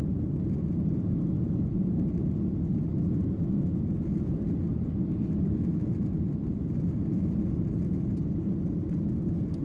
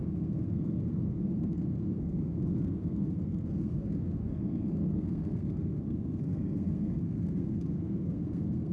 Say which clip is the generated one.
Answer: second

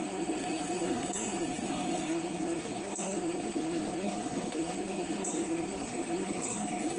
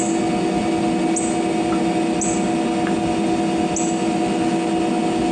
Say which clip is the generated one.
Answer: first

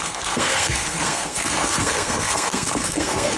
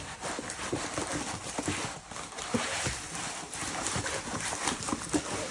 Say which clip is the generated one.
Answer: first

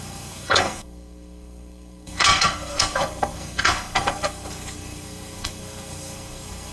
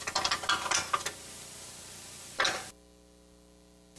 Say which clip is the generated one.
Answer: first